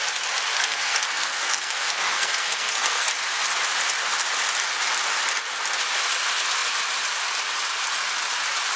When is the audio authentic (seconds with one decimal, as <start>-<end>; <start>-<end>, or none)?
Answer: 0.0-0.5; 3.1-8.8